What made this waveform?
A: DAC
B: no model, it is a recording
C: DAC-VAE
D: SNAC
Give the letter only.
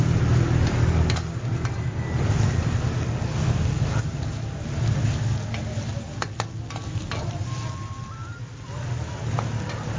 B